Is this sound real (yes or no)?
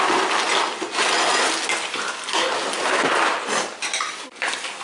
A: yes